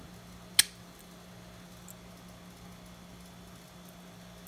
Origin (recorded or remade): recorded